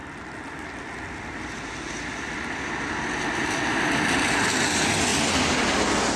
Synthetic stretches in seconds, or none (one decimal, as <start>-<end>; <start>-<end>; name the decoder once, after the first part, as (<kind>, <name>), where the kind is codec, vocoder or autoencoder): none